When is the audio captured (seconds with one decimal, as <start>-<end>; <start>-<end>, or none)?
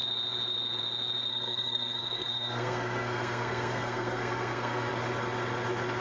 0.0-1.3; 4.9-6.0